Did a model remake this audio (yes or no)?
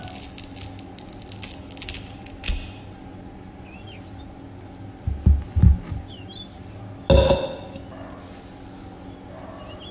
no